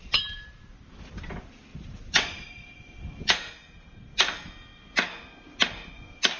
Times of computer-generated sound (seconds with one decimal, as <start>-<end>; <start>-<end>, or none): 1.7-4.0